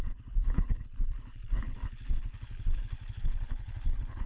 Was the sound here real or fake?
fake